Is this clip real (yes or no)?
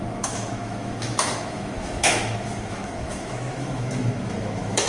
no